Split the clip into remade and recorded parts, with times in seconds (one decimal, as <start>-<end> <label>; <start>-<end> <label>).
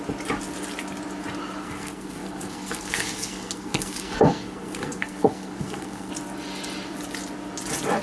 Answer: 0.0-1.6 recorded; 1.6-6.1 remade; 6.1-8.0 recorded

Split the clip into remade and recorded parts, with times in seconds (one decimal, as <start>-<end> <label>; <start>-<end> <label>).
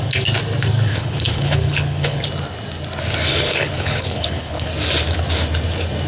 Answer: 0.0-0.9 recorded; 0.9-2.2 remade; 2.2-3.3 recorded; 3.3-4.7 remade; 4.7-6.1 recorded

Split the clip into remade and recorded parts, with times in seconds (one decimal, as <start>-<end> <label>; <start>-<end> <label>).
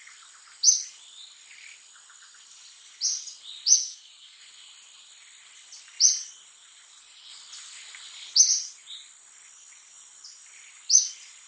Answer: 0.0-3.8 recorded; 3.8-4.4 remade; 4.4-11.5 recorded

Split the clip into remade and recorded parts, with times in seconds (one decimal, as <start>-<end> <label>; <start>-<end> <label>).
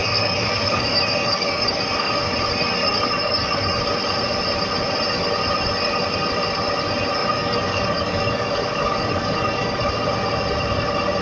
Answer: 0.0-2.2 remade; 2.2-2.8 recorded; 2.8-3.8 remade; 3.8-7.2 recorded; 7.2-9.9 remade; 9.9-11.2 recorded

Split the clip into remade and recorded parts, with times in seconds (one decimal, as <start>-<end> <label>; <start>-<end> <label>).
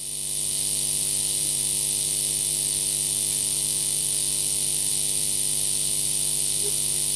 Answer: 0.0-7.2 recorded